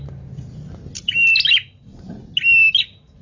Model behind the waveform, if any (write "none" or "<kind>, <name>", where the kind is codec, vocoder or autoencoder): none